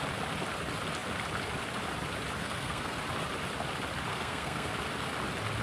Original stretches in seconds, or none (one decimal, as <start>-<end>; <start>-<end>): 0.0-2.4; 3.0-4.1; 4.7-5.6

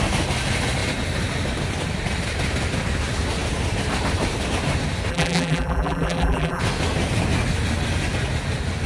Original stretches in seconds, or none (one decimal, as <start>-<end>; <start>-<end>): 0.0-5.1; 6.6-8.9